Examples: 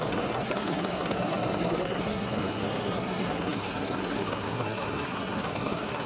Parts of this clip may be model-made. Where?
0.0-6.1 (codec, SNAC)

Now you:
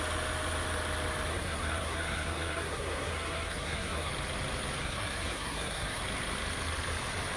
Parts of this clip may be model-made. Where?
1.3-4.1 (codec, SNAC); 4.8-6.0

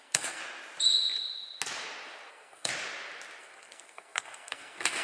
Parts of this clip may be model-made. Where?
0.0-0.4 (codec, SNAC); 2.3-2.7; 3.4-5.0

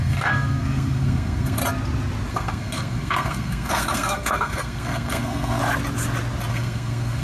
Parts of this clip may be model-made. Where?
0.0-1.6 (codec, SNAC); 2.3-5.6; 6.5-7.2

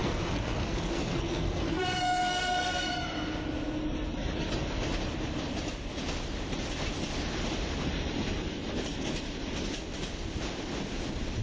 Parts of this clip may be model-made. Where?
0.0-2.9 (codec, SNAC)

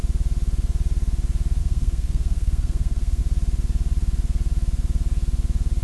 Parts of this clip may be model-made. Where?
1.6-3.2 (codec, SNAC)